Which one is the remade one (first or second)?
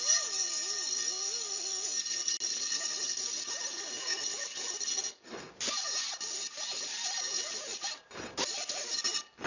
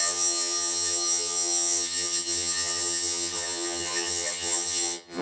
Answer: second